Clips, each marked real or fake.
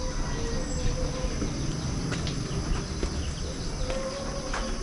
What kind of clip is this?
real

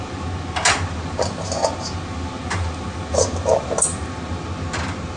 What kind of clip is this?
real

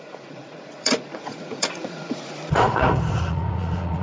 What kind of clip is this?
fake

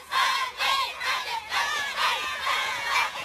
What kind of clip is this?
fake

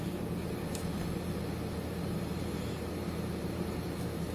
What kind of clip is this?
fake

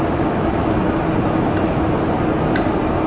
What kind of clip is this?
real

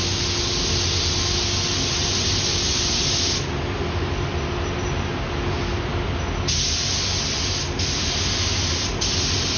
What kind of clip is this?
real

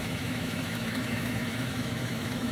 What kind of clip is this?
fake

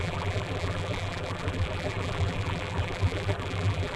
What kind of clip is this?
fake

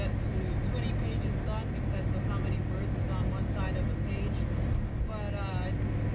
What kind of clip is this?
real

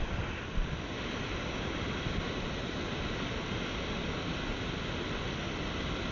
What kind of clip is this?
real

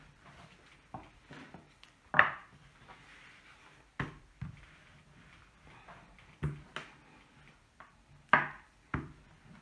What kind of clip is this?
fake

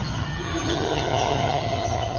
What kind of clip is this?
fake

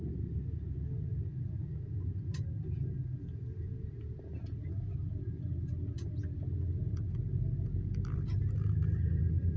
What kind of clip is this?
real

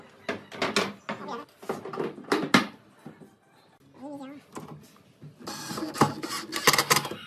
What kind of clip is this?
real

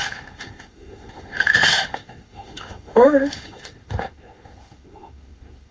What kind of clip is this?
fake